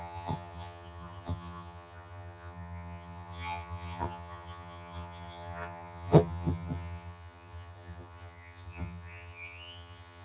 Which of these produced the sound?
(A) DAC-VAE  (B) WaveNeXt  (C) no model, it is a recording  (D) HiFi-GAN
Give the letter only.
D